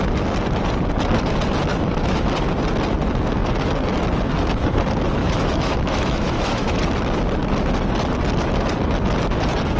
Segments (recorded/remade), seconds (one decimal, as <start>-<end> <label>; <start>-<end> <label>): 0.0-1.7 recorded; 1.7-2.3 remade; 2.3-5.2 recorded; 5.2-6.8 remade; 6.8-9.8 recorded

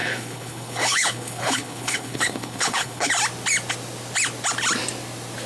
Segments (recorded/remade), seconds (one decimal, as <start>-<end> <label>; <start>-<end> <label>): 0.0-3.1 remade; 3.1-5.5 recorded

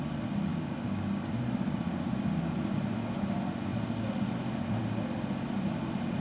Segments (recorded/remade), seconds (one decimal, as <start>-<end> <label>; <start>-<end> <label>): 0.0-0.5 recorded; 0.5-1.3 remade; 1.3-6.2 recorded

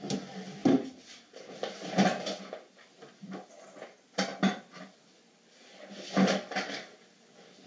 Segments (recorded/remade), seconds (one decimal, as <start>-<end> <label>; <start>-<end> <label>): 0.0-7.7 recorded

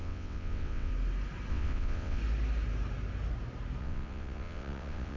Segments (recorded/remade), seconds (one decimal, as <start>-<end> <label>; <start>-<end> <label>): 0.0-0.9 remade; 0.9-1.5 recorded; 1.5-2.2 remade; 2.2-3.8 recorded; 3.8-5.2 remade

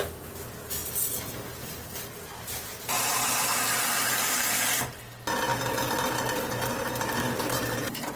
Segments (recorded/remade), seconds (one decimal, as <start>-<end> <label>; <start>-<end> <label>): 0.0-5.5 recorded; 5.5-8.2 remade

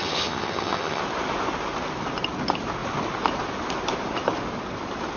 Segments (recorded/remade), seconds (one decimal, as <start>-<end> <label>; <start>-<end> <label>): 0.0-1.0 remade; 1.0-5.2 recorded